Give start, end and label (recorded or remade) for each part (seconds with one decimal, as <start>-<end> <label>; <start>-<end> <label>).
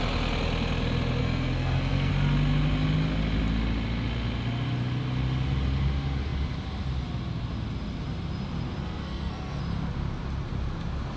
0.0-1.2 recorded; 1.2-2.1 remade; 2.1-8.8 recorded; 8.8-9.6 remade; 9.6-11.2 recorded